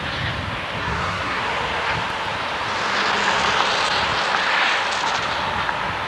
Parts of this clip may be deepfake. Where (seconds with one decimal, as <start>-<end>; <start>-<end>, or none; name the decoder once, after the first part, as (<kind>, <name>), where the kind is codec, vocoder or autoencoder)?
0.8-1.4 (codec, SNAC)